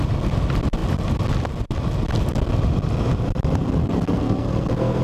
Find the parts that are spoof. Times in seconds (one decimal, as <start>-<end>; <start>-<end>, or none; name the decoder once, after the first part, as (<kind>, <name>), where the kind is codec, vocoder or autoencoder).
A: 3.8-5.0 (codec, SNAC)